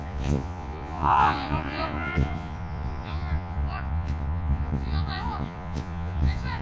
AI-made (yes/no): yes